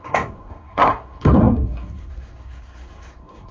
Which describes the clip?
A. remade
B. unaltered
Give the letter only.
A